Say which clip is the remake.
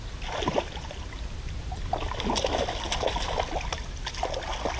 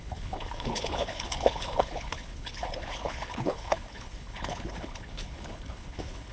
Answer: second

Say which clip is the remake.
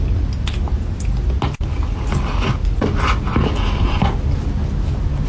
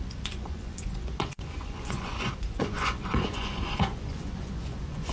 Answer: second